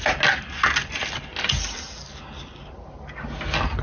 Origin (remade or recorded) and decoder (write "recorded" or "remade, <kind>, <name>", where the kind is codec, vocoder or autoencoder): recorded